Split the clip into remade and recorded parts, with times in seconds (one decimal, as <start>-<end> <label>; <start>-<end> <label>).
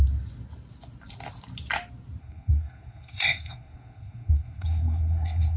0.0-2.2 recorded; 2.2-5.6 remade